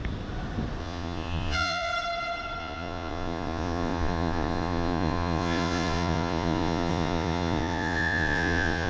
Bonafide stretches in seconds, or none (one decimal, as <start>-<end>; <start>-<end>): 0.0-0.8; 1.9-2.6